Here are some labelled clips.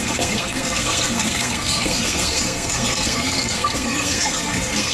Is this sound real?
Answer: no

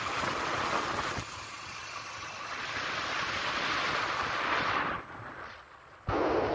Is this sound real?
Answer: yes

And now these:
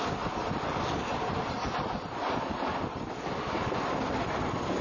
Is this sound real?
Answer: yes